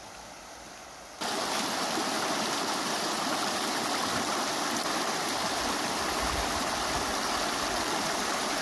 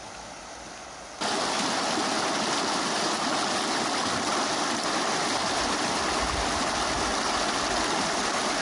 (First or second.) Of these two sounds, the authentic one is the second